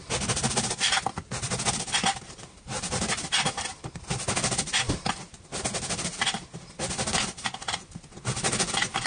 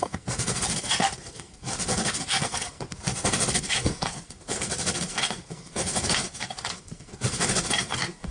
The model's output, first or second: second